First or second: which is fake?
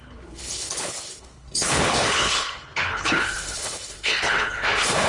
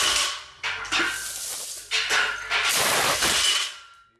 first